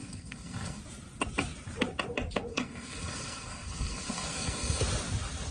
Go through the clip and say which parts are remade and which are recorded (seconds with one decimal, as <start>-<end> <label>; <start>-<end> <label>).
0.0-0.8 remade; 0.8-2.5 recorded; 2.5-4.8 remade; 4.8-5.5 recorded